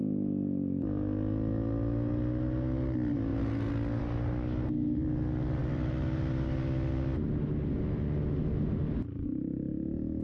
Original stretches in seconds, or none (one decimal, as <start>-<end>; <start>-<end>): 0.0-10.2